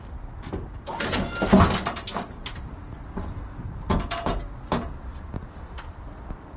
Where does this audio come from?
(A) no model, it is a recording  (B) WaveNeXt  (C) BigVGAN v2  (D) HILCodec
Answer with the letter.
A